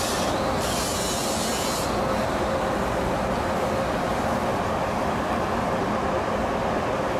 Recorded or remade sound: recorded